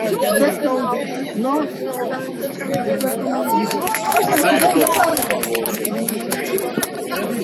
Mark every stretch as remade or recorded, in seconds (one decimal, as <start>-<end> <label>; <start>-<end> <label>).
0.0-5.1 remade; 5.1-5.7 recorded; 5.7-6.5 remade; 6.5-7.4 recorded